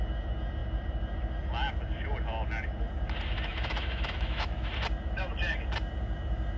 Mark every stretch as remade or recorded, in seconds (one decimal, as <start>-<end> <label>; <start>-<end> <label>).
0.0-3.5 recorded; 3.5-4.7 remade; 4.7-6.6 recorded